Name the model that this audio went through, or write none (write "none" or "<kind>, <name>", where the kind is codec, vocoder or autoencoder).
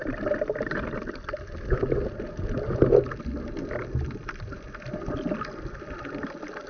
none